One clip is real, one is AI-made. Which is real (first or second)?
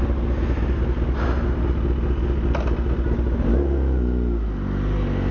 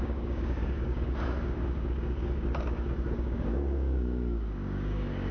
first